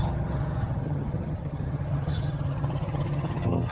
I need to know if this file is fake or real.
fake